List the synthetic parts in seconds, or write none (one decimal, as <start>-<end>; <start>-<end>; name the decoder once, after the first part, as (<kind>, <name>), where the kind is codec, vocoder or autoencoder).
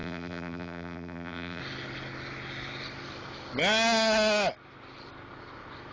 0.0-1.6 (vocoder, BigVGAN v2)